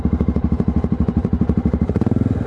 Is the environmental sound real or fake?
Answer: real